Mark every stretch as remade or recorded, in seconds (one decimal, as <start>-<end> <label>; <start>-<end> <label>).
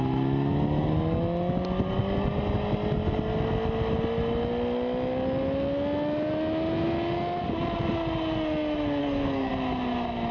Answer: 0.0-9.0 recorded; 9.0-9.5 remade; 9.5-10.3 recorded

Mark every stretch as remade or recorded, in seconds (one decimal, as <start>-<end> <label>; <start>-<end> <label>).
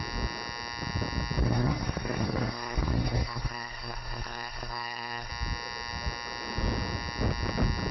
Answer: 0.0-1.4 recorded; 1.4-5.3 remade; 5.3-7.9 recorded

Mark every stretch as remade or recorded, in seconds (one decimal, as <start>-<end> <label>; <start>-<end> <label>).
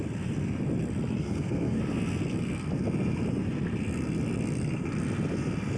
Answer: 0.0-1.2 recorded; 1.2-1.8 remade; 1.8-5.8 recorded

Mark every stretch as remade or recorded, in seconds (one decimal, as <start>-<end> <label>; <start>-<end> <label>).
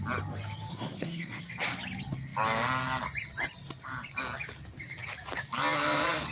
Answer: 0.0-0.7 recorded; 0.7-1.4 remade; 1.4-6.3 recorded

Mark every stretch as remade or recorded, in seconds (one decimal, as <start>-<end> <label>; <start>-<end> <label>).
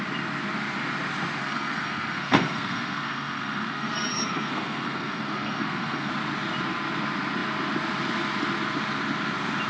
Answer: 0.0-1.4 recorded; 1.4-6.1 remade; 6.1-9.7 recorded